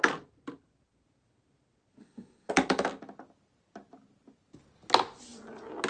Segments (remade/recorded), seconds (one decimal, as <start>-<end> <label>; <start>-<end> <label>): 0.0-2.0 recorded; 2.0-2.5 remade; 2.5-5.9 recorded